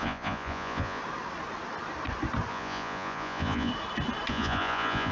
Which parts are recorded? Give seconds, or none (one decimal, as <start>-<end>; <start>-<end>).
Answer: 1.0-2.5; 3.7-4.3